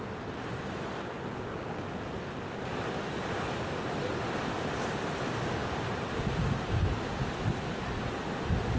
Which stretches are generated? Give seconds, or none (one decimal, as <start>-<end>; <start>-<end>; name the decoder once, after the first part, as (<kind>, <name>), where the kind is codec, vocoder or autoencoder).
1.3-1.8 (codec, DAC)